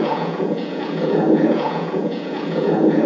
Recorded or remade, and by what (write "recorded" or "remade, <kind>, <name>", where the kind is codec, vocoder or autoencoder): remade, vocoder, Vocos